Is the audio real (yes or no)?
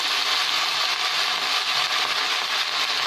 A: yes